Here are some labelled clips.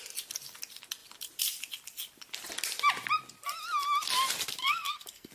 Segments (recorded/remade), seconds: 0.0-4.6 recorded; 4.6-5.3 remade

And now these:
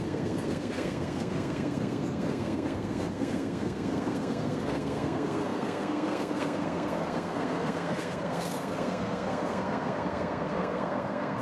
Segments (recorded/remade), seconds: 0.0-11.4 remade

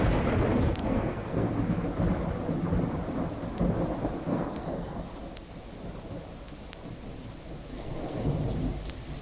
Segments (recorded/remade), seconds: 0.0-0.8 recorded; 0.8-1.5 remade; 1.5-4.3 recorded; 4.3-5.1 remade; 5.1-7.7 recorded; 7.7-8.3 remade; 8.3-9.2 recorded